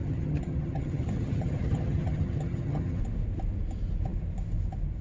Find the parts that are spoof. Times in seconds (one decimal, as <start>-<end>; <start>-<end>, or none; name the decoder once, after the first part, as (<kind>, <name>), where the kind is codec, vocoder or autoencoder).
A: 0.0-3.0 (vocoder, HiFi-GAN)